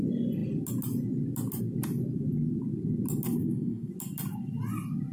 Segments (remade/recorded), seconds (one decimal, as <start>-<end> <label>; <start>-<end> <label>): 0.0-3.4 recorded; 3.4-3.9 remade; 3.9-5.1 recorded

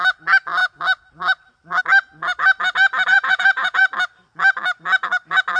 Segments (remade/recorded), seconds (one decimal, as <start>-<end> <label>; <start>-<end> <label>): 0.0-3.1 recorded; 3.1-3.8 remade; 3.8-5.6 recorded

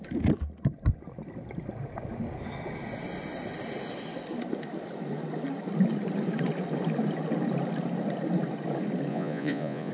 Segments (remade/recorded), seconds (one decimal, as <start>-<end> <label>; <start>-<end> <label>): 0.0-9.1 recorded; 9.1-9.9 remade